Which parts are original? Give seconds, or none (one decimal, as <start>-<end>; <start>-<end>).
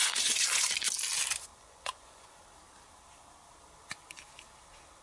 0.7-1.5; 2.3-5.0